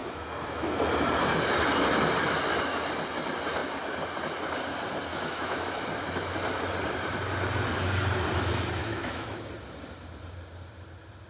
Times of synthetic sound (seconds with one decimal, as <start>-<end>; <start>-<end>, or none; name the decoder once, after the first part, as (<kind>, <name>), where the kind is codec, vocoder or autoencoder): 0.0-0.7 (autoencoder, DAC-VAE); 5.1-5.8; 8.8-9.5